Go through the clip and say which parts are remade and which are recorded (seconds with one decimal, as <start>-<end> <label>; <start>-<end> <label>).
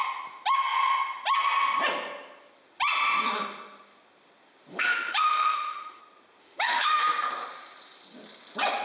0.0-4.7 recorded; 4.7-6.0 remade; 6.0-6.4 recorded; 6.4-7.0 remade; 7.0-8.8 recorded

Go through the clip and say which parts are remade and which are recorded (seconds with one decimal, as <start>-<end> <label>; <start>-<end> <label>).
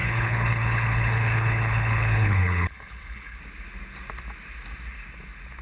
0.0-3.4 remade; 3.4-5.6 recorded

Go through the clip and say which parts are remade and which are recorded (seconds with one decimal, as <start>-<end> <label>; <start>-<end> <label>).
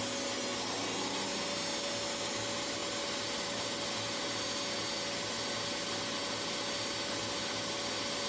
0.0-8.3 recorded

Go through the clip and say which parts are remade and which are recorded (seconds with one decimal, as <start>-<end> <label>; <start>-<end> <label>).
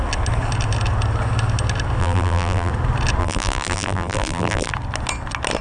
0.0-2.0 recorded; 2.0-2.7 remade; 2.7-3.2 recorded; 3.2-4.7 remade; 4.7-5.6 recorded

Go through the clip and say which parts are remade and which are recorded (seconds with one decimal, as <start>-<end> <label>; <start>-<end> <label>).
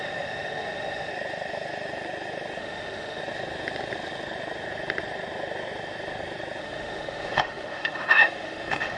0.0-1.1 remade; 1.1-2.6 recorded; 2.6-3.2 remade; 3.2-6.6 recorded; 6.6-9.0 remade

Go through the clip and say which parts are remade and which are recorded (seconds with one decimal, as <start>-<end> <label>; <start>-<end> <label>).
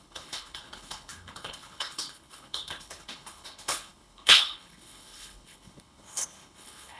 0.0-7.0 remade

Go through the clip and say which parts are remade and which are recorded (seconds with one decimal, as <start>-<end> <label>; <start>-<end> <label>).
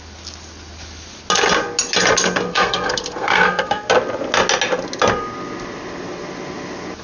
0.0-2.5 recorded; 2.5-3.9 remade; 3.9-7.0 recorded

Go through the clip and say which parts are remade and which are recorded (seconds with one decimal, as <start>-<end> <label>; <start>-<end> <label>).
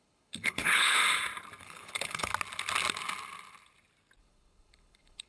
0.0-1.0 remade; 1.0-1.6 recorded; 1.6-2.3 remade; 2.3-4.2 recorded; 4.2-5.3 remade